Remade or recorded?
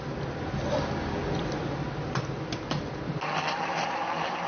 recorded